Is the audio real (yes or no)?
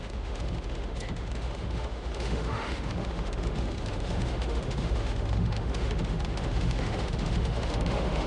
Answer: no